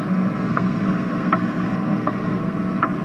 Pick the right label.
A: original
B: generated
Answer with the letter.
B